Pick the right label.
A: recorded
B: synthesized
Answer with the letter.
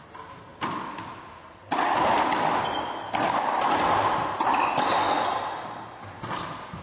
A